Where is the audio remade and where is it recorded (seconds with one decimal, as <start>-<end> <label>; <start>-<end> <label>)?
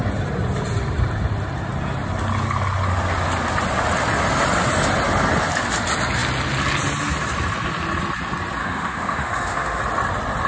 0.0-8.6 recorded; 8.6-9.8 remade; 9.8-10.5 recorded